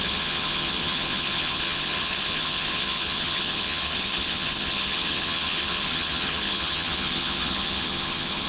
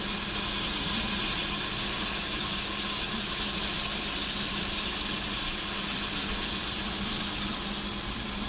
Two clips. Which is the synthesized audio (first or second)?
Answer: first